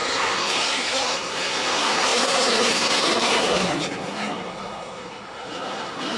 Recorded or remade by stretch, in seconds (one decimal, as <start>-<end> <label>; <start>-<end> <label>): 0.0-6.2 remade